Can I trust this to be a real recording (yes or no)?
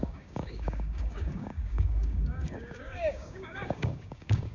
no